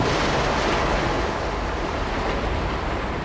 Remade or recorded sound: recorded